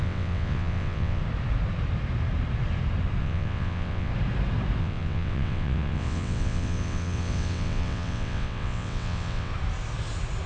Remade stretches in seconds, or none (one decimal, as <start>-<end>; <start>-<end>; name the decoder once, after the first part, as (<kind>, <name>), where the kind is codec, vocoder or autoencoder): 0.0-1.2 (vocoder, WaveNeXt); 3.2-4.1; 4.8-9.5